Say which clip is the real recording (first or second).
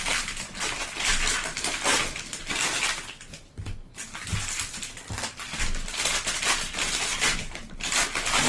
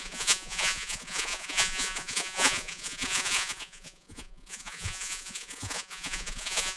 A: first